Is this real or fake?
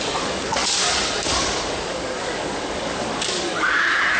fake